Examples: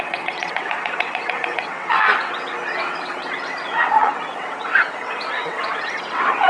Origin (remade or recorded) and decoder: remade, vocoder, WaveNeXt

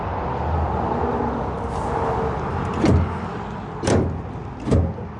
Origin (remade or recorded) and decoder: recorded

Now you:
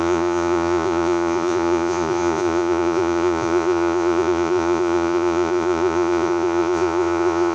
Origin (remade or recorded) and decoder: remade, vocoder, Vocos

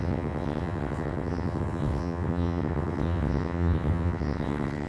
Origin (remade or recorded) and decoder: remade, vocoder, WaveNeXt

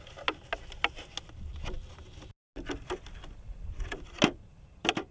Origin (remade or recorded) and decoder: recorded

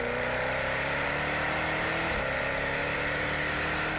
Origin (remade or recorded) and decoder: remade, vocoder, BigVGAN v2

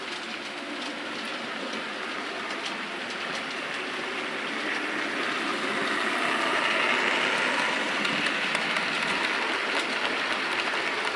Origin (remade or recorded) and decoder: recorded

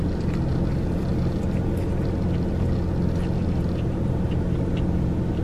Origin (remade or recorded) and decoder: recorded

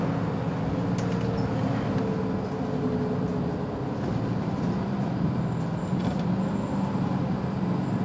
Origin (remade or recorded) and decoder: recorded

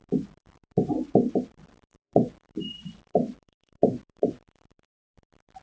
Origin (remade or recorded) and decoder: remade, vocoder, BigVGAN v2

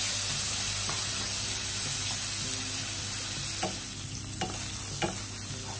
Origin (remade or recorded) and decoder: recorded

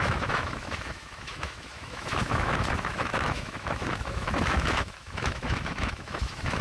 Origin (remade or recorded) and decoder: remade, autoencoder, DAC-VAE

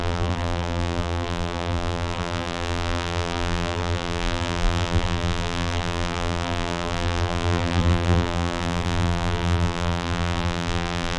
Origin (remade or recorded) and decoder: remade, vocoder, BigVGAN v2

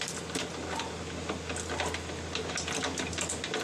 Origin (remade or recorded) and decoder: recorded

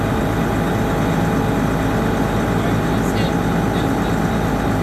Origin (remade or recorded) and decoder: recorded